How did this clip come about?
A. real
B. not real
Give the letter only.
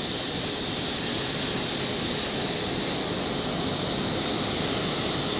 A